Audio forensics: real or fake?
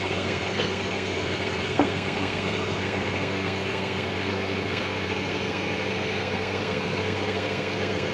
fake